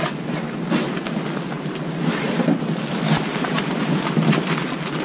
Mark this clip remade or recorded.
recorded